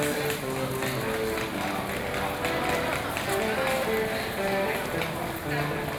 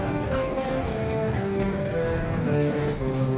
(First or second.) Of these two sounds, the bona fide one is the first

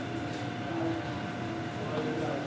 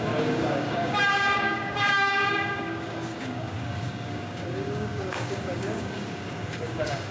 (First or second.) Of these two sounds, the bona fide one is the first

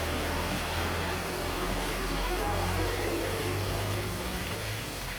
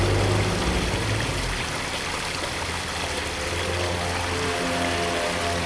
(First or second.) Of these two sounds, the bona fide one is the second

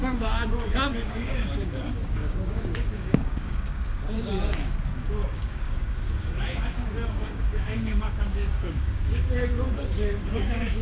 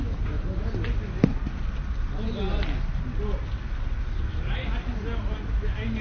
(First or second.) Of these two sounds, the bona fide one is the second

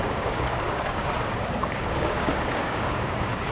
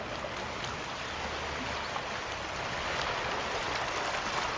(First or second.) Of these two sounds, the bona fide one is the second